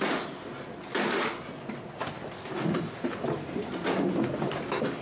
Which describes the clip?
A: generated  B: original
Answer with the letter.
B